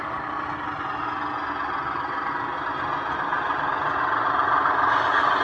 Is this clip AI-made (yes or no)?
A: no